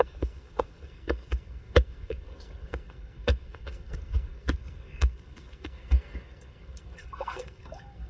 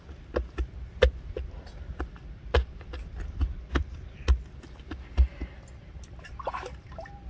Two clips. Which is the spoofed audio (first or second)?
first